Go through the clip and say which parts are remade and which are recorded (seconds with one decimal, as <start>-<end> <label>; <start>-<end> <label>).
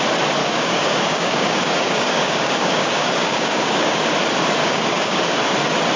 0.0-0.4 recorded; 0.4-4.0 remade; 4.0-4.6 recorded; 4.6-5.2 remade; 5.2-6.0 recorded